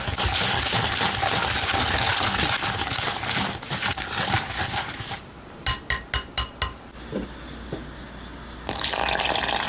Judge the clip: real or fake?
real